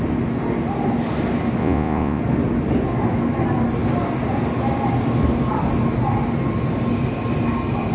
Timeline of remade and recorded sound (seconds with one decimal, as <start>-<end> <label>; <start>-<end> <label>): 0.0-1.6 recorded; 1.6-2.2 remade; 2.2-7.9 recorded